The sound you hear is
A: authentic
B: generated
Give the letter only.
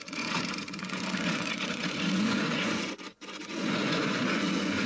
B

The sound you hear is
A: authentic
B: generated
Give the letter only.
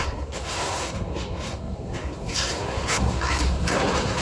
B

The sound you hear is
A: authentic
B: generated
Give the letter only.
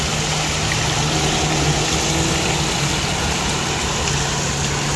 A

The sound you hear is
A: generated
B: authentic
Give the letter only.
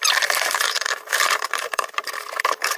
A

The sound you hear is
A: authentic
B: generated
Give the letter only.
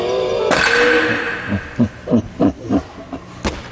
A